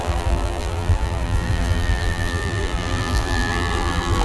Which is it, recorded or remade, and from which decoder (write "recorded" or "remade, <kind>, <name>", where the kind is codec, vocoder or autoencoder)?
remade, vocoder, BigVGAN v2